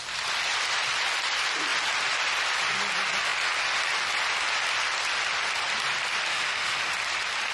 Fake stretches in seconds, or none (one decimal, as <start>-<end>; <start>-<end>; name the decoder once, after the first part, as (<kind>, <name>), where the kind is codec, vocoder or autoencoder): 6.3-6.9 (autoencoder, DAC-VAE)